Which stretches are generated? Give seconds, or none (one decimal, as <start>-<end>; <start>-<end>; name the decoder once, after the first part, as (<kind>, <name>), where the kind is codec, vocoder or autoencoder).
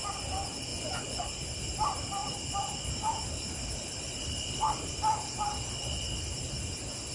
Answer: 0.7-1.2 (vocoder, Vocos)